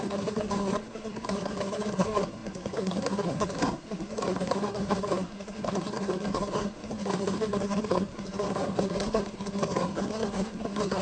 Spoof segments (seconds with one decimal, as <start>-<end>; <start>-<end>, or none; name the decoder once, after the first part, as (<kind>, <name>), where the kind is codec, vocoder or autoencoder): 0.0-11.0 (codec, SNAC)